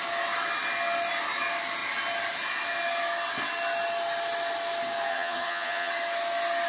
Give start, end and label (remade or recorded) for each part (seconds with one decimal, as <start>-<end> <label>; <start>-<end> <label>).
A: 0.0-5.1 recorded; 5.1-5.9 remade; 5.9-6.7 recorded

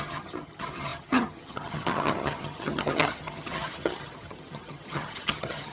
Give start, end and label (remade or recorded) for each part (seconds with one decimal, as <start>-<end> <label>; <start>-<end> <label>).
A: 0.0-5.7 remade

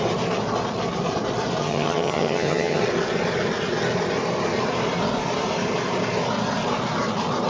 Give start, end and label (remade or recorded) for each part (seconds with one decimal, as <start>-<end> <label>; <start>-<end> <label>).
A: 0.0-1.6 recorded; 1.6-2.8 remade; 2.8-7.5 recorded

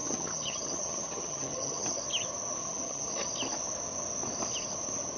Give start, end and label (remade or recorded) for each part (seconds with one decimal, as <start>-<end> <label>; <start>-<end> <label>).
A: 0.0-2.0 remade; 2.0-2.6 recorded; 2.6-3.3 remade; 3.3-5.2 recorded